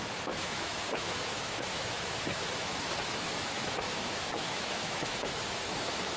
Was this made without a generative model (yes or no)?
no